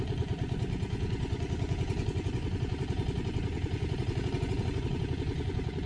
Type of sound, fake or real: fake